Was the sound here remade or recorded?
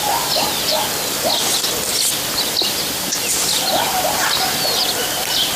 recorded